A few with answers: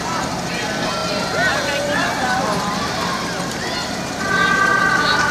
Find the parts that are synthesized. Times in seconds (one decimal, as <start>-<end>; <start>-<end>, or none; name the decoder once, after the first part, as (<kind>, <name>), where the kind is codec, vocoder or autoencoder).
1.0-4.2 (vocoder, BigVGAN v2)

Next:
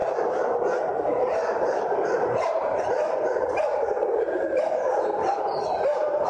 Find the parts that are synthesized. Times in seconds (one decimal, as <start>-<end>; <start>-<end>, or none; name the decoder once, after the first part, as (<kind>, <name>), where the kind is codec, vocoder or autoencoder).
0.0-6.3 (vocoder, BigVGAN v2)

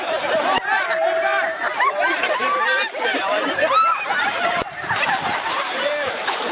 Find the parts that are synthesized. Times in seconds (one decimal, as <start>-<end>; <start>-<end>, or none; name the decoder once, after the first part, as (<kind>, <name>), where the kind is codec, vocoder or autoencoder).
0.0-6.5 (vocoder, BigVGAN v2)